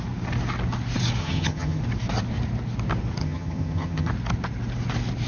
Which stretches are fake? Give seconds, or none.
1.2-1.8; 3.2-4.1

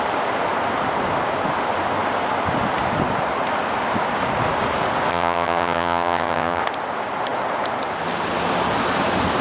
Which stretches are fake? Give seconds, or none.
5.1-6.6